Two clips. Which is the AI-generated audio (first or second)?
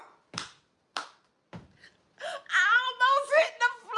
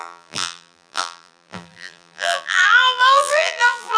second